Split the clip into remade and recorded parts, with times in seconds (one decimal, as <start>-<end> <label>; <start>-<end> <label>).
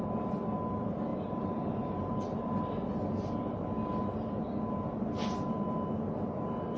0.0-1.1 recorded; 1.1-2.6 remade; 2.6-6.8 recorded